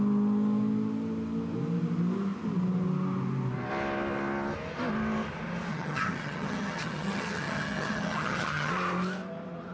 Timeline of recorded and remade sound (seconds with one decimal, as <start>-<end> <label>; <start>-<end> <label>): 0.0-5.7 recorded; 5.7-8.7 remade; 8.7-9.7 recorded